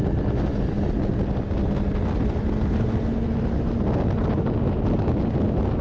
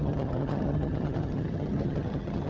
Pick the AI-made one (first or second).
second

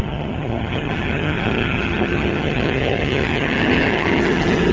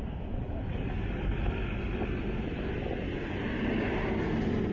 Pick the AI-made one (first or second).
first